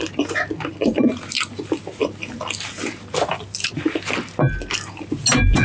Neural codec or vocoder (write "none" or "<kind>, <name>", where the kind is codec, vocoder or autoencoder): none